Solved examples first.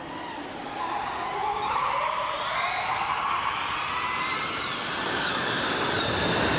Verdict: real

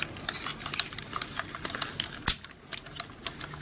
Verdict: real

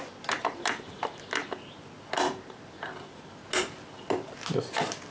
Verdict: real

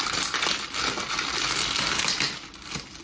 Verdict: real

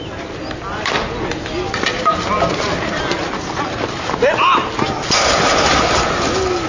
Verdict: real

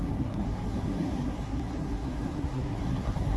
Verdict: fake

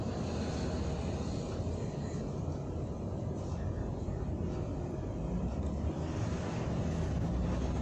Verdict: real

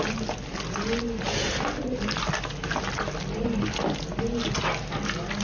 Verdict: real